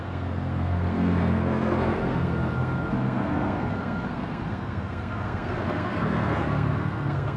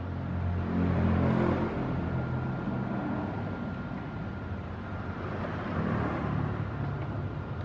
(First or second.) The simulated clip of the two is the first